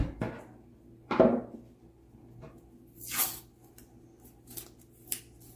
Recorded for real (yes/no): yes